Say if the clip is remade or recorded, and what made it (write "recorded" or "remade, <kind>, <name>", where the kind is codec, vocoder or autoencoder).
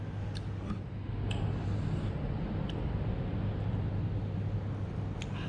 recorded